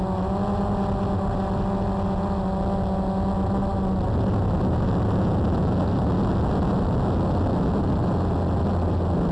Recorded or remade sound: recorded